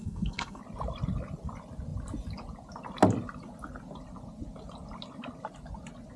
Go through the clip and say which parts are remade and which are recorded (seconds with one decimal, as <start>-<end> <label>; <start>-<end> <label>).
0.0-0.6 remade; 0.6-6.2 recorded